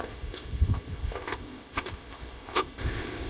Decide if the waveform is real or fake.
fake